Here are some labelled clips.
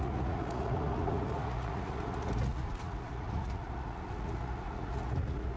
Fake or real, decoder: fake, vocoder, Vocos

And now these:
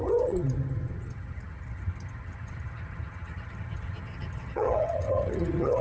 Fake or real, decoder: fake, vocoder, HiFi-GAN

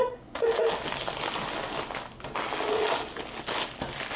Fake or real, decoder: real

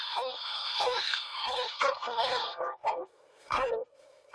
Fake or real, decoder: fake, codec, SNAC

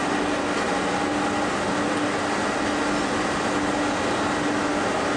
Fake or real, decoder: real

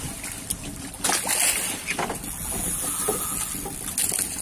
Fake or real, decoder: real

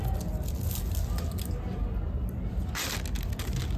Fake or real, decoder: real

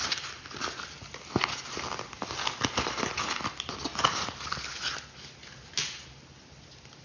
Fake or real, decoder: real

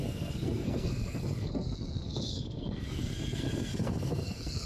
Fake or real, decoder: fake, codec, SNAC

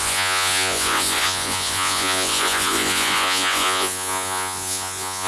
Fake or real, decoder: fake, vocoder, Vocos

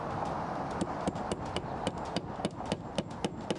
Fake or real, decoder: real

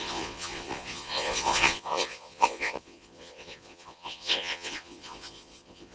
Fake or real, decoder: fake, vocoder, Vocos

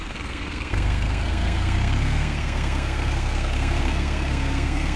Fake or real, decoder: fake, codec, SNAC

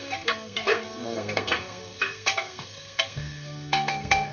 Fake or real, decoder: fake, codec, SNAC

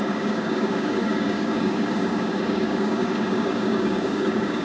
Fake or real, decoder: fake, codec, DAC